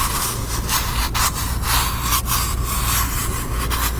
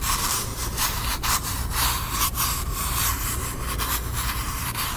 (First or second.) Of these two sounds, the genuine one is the first